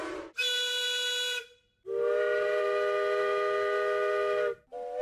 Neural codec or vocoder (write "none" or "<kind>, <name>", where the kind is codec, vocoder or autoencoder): none